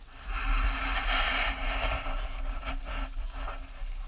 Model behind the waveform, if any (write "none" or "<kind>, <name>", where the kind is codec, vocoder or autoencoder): none